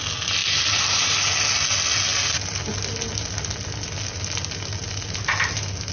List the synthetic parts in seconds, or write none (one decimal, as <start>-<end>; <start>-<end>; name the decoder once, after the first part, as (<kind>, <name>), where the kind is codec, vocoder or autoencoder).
none